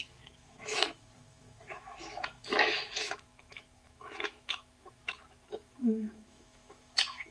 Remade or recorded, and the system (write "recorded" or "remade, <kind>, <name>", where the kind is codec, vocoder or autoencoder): remade, autoencoder, DAC-VAE